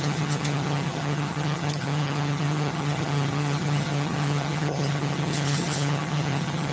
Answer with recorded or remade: remade